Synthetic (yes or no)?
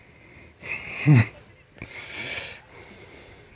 no